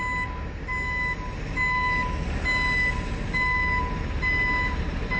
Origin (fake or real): real